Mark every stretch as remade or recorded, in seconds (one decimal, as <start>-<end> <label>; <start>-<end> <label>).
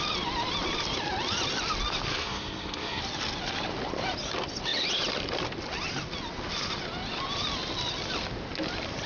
0.0-2.1 recorded; 2.1-3.0 remade; 3.0-9.1 recorded